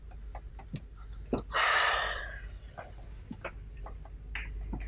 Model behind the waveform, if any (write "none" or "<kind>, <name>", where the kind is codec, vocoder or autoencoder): none